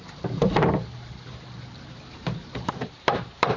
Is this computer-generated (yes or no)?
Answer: yes